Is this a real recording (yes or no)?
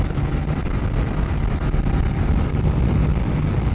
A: yes